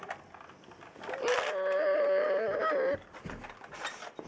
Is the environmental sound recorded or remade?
recorded